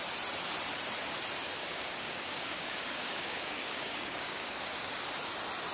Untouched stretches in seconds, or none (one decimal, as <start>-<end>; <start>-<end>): 0.0-1.6; 4.9-5.7

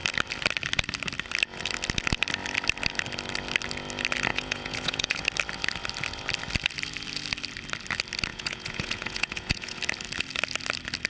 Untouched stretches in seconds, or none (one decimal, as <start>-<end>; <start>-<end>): 0.0-4.3; 5.2-8.3; 9.8-11.1

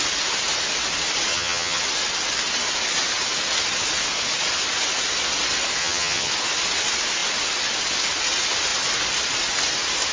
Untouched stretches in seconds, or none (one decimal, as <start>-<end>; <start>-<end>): 0.0-1.3; 1.8-5.8; 6.3-10.1

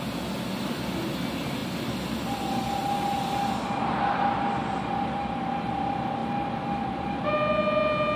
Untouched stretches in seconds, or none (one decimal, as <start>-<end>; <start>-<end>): 0.0-8.2

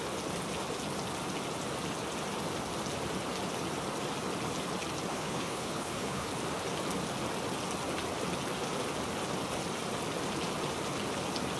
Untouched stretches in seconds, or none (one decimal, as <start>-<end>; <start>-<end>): 0.0-5.1; 6.3-11.6

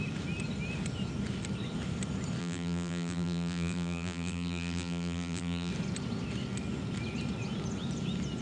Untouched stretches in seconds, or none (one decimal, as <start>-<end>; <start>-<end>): 0.0-2.4; 5.7-8.4

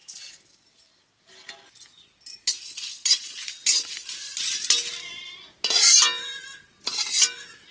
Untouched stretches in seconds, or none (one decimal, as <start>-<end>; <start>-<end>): 0.0-7.7